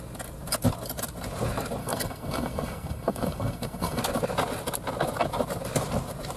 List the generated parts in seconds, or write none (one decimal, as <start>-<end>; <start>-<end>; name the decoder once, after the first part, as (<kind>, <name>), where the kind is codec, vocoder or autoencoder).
1.8-4.0 (codec, SNAC)